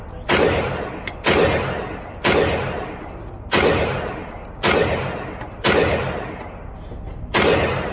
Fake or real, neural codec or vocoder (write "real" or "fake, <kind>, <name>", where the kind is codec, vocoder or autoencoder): real